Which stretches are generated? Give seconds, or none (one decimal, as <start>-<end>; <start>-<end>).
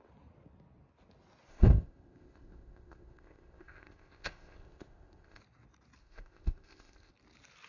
1.5-5.4; 6.0-7.1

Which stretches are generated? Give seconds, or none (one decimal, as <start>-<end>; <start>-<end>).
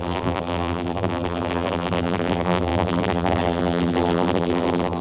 0.0-5.0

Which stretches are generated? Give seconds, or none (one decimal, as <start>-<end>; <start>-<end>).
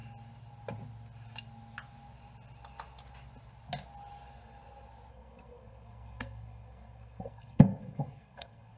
5.1-8.8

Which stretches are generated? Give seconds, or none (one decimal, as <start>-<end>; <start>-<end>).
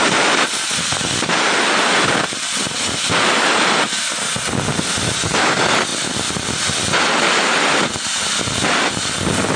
none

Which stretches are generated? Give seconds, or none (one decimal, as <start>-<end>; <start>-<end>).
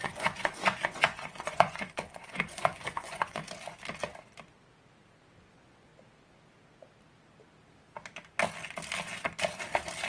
0.0-3.4; 5.4-5.9